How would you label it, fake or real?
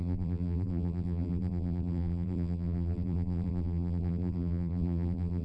fake